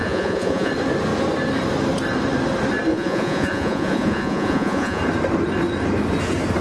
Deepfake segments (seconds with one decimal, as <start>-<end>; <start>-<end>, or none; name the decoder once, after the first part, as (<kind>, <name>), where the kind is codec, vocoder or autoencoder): 0.0-0.7 (vocoder, Vocos); 2.9-5.0